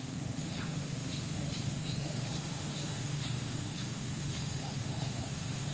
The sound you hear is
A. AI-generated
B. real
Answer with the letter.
A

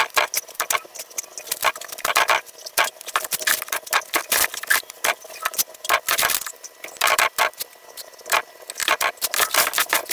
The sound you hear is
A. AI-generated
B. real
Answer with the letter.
B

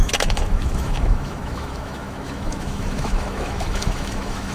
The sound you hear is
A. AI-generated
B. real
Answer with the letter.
A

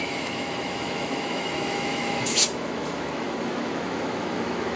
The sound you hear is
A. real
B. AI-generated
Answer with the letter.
B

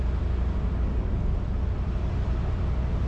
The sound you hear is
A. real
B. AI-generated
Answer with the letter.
A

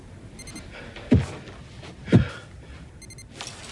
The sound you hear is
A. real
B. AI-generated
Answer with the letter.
A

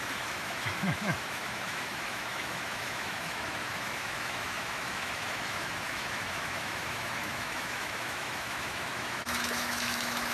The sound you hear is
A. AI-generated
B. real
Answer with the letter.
A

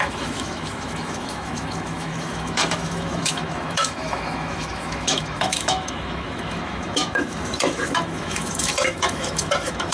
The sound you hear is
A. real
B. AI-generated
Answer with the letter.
B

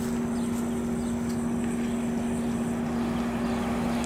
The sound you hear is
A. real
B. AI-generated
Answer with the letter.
A